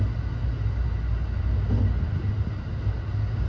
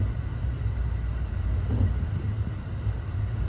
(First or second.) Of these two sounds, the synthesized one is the second